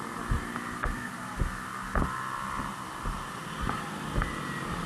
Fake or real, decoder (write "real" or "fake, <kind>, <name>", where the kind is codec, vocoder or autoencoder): real